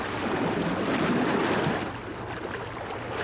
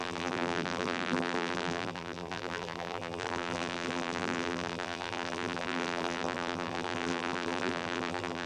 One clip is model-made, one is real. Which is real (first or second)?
first